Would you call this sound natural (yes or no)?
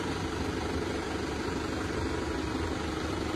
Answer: yes